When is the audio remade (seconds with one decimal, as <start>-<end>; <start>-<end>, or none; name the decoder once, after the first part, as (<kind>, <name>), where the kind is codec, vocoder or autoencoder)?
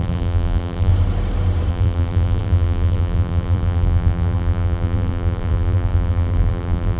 0.0-0.9 (vocoder, BigVGAN v2); 1.7-7.0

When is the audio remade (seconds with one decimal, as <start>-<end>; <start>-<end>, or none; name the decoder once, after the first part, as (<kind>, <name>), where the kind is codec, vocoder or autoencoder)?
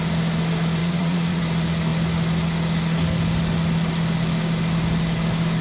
0.8-1.4 (vocoder, Vocos)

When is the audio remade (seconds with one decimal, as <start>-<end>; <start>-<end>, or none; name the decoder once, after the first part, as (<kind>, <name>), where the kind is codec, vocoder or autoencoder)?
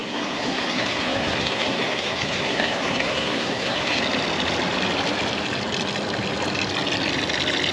0.0-4.0 (codec, SNAC)